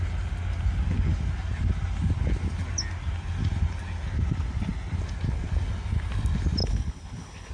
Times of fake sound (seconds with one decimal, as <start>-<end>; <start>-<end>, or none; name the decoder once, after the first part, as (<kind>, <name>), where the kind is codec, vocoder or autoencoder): 6.6-7.5 (codec, HILCodec)